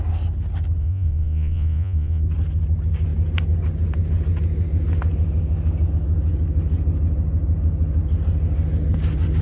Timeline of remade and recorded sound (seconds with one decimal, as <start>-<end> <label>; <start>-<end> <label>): 0.0-0.8 recorded; 0.8-2.2 remade; 2.2-9.4 recorded